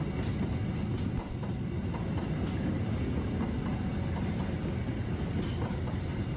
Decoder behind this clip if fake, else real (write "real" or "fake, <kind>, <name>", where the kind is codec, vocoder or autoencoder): real